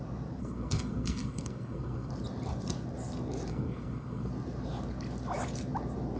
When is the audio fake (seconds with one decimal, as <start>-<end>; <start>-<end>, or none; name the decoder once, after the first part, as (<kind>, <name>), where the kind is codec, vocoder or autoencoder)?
0.4-2.1 (codec, SNAC); 3.5-4.3